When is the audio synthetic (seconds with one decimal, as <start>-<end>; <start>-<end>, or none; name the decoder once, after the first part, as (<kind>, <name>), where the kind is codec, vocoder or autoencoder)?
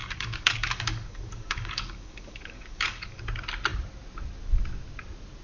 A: 0.0-3.2 (codec, DAC)